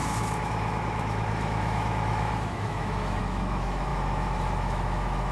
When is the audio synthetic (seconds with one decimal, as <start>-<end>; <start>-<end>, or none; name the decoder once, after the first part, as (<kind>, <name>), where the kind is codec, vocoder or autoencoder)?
0.0-5.3 (autoencoder, DAC-VAE)